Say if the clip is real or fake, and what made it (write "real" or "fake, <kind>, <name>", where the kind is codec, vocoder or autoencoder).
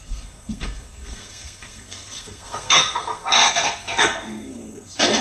fake, codec, SNAC